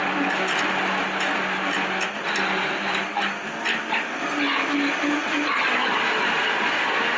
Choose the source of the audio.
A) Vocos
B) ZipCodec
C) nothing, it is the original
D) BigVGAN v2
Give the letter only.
C